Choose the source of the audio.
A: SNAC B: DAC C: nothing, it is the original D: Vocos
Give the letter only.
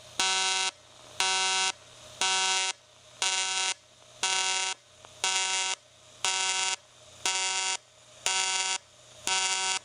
C